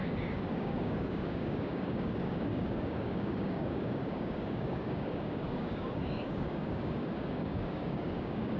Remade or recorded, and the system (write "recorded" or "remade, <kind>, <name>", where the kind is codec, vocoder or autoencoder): remade, codec, DAC